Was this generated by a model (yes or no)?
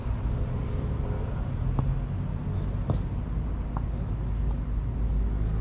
no